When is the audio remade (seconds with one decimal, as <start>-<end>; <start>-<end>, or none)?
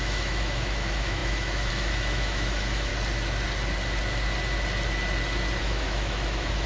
0.0-2.9; 5.6-6.7